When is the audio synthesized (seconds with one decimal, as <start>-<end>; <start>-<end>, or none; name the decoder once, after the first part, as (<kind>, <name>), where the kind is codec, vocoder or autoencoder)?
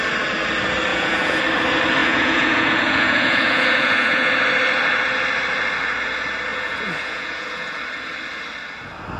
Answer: 0.9-1.4 (vocoder, Vocos); 2.0-4.3; 6.5-7.8